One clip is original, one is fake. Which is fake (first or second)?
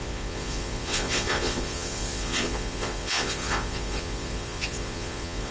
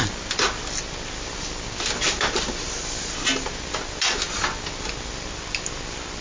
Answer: first